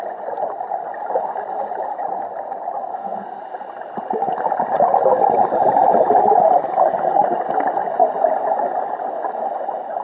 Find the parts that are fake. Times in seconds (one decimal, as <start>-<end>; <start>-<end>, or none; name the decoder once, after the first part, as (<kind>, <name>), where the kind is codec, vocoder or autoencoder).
2.9-3.4 (codec, SNAC)